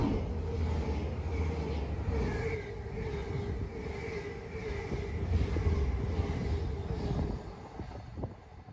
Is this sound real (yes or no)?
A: yes